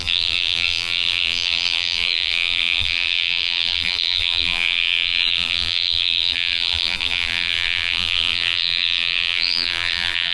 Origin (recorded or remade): remade